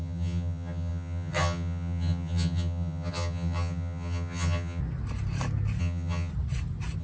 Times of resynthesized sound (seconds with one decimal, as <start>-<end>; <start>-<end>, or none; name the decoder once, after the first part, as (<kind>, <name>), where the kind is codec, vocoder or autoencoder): 0.0-4.8 (vocoder, HiFi-GAN); 5.8-6.3